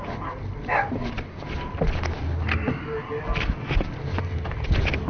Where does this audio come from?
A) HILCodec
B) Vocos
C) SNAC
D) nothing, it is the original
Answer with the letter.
D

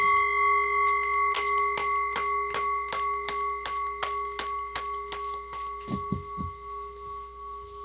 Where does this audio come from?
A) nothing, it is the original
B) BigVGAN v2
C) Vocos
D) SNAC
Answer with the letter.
A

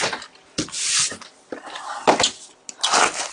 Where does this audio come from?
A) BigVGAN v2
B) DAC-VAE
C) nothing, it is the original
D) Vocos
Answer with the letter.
C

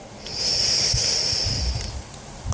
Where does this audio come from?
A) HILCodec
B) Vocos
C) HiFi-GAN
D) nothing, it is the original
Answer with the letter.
D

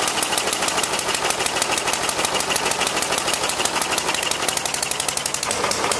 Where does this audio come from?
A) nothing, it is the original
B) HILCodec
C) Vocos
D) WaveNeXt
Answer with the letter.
A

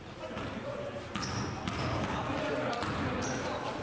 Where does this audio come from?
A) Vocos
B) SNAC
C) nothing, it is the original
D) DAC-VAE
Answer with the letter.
C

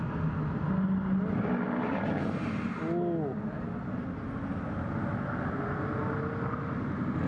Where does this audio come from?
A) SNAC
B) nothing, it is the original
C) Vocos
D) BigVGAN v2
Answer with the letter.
B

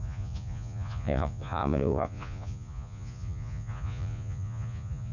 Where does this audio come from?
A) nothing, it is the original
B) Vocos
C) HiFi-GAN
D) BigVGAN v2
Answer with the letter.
B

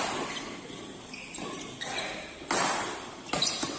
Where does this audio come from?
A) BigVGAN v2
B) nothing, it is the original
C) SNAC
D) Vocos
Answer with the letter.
B